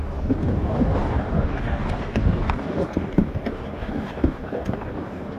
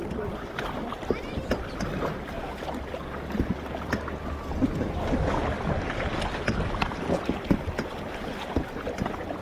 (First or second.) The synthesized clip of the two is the first